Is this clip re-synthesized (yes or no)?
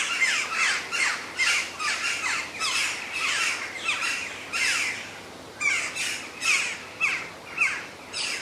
no